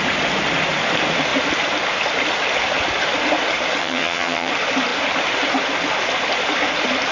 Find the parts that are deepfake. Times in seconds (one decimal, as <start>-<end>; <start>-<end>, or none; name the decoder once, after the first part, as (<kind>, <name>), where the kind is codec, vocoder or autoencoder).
3.8-4.5 (vocoder, HiFi-GAN)